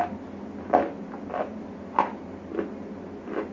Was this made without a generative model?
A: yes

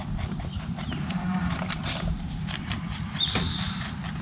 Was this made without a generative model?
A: no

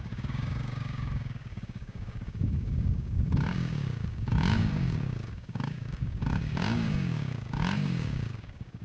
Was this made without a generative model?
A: no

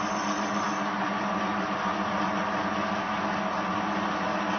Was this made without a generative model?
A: yes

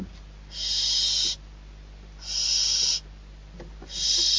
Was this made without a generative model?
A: yes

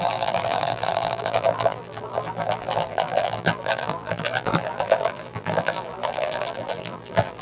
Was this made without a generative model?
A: no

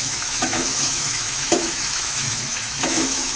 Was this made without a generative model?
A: no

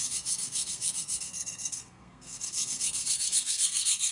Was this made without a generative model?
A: no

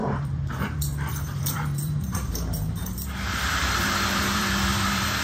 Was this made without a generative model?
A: no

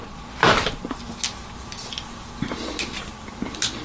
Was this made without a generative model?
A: yes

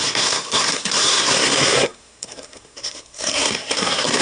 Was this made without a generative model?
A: no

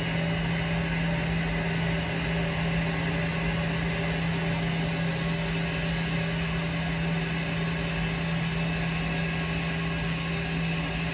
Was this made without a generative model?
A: yes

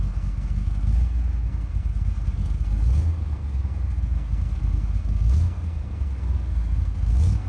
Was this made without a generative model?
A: no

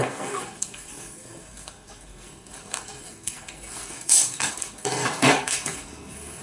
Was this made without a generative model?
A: no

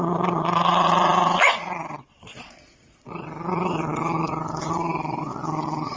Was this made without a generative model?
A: no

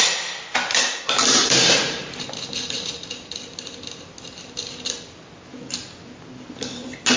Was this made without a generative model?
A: yes